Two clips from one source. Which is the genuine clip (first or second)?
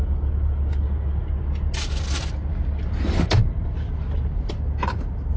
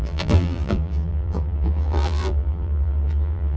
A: first